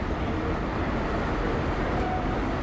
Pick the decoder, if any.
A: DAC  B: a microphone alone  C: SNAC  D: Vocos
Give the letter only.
B